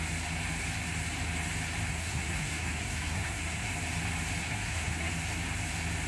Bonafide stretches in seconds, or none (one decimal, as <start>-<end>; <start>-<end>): 0.0-1.9; 3.7-4.4; 5.1-6.1

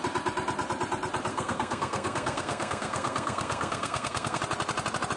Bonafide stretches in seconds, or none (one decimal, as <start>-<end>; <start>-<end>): 0.0-1.3; 4.4-5.2